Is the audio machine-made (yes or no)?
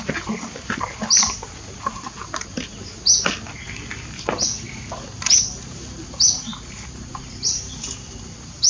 no